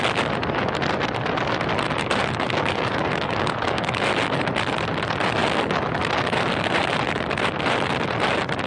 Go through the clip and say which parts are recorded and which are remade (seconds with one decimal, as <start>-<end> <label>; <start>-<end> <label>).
0.0-2.0 recorded; 2.0-4.0 remade; 4.0-8.7 recorded